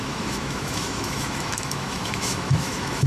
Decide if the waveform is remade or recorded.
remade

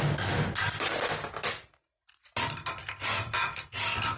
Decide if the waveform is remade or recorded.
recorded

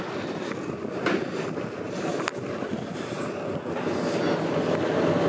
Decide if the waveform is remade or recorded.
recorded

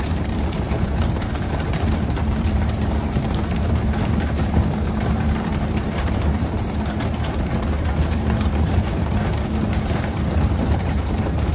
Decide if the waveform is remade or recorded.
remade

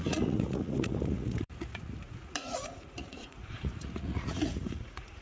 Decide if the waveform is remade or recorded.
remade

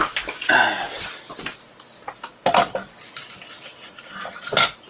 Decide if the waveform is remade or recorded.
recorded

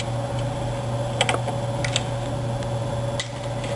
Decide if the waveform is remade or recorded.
recorded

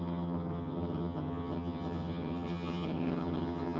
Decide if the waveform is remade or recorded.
remade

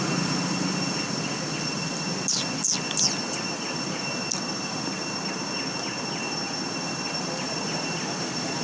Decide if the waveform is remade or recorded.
recorded